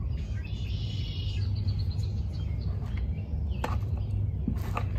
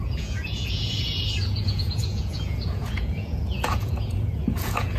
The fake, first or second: second